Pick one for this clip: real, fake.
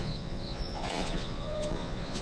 fake